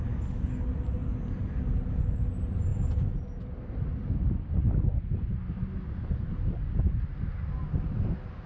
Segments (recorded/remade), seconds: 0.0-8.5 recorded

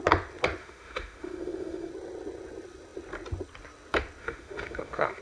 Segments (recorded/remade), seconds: 0.0-0.6 recorded; 0.6-1.9 remade; 1.9-4.2 recorded; 4.2-5.2 remade

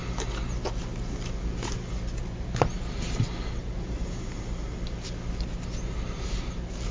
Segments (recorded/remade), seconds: 0.0-6.9 recorded

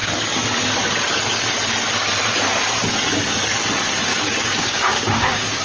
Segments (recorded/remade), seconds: 0.0-4.1 recorded; 4.1-5.6 remade